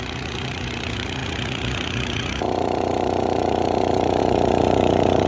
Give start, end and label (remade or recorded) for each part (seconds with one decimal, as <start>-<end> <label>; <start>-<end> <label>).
0.0-5.3 remade